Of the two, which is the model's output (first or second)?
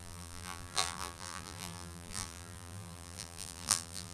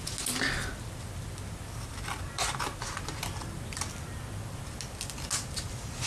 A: first